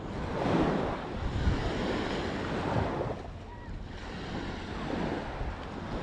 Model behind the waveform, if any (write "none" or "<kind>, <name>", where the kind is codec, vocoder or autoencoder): none